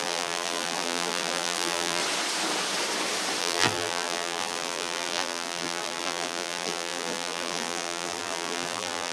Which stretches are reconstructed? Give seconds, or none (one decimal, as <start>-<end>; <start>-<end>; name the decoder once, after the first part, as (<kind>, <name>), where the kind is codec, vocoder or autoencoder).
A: 0.0-2.0 (vocoder, BigVGAN v2); 3.4-9.1